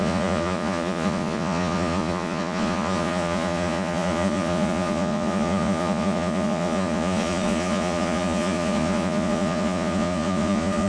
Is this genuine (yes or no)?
no